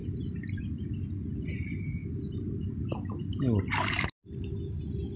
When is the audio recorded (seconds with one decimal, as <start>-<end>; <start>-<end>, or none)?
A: 0.6-5.2